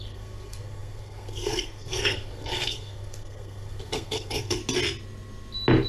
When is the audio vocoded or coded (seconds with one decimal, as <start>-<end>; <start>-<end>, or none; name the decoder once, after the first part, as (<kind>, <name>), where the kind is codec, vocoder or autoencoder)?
0.0-4.6 (codec, SNAC)